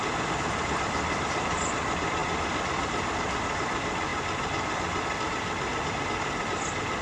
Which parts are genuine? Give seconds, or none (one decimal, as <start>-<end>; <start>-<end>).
0.0-7.0

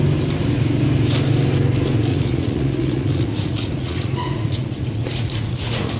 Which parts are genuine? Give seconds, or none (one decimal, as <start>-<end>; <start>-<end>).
0.0-2.1

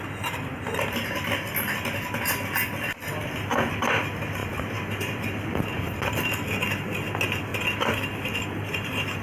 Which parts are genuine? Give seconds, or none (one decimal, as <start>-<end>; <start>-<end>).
0.0-9.2

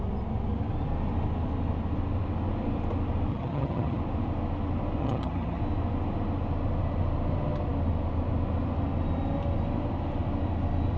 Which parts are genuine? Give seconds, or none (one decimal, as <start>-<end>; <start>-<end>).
0.0-3.3; 4.0-5.0; 5.6-11.0

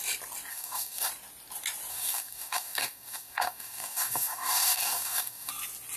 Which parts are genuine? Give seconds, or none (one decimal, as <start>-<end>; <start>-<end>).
0.0-0.5; 1.1-1.9; 5.5-6.0